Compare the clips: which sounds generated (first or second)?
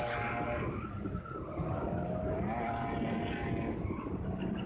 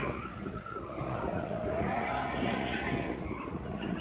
second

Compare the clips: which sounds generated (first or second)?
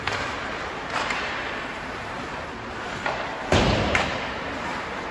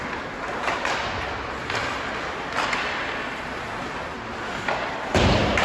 first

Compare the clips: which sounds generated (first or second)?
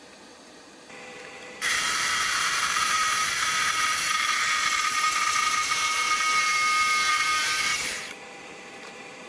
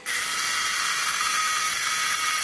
first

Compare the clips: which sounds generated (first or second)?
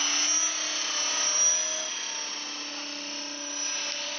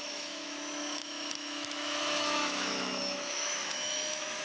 second